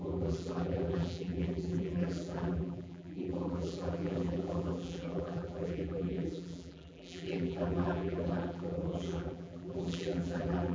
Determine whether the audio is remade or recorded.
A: remade